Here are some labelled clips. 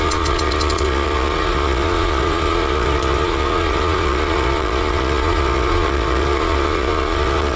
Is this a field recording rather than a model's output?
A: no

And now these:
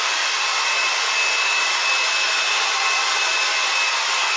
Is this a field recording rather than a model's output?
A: yes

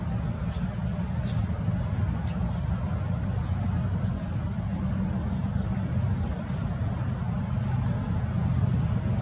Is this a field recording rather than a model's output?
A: yes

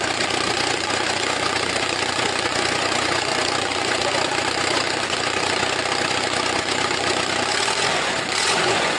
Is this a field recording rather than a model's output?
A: no